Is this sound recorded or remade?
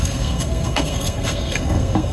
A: remade